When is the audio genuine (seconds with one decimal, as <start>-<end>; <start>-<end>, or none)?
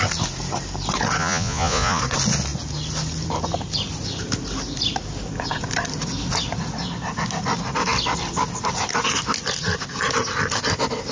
0.0-1.2; 2.0-11.1